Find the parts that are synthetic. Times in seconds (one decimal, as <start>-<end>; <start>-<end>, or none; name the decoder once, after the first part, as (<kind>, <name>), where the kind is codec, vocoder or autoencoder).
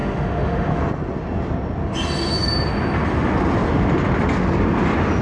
0.0-0.8 (autoencoder, DAC-VAE)